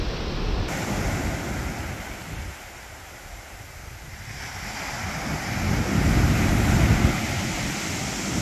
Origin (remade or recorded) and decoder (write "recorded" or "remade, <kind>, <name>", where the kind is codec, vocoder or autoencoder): recorded